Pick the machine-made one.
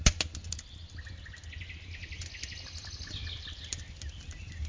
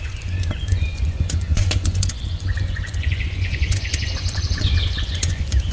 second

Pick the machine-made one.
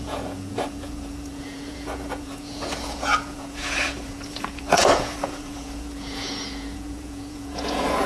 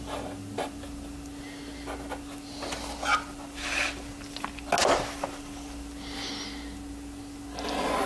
first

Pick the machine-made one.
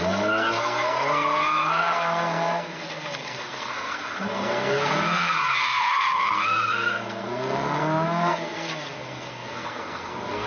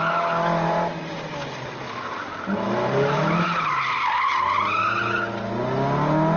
first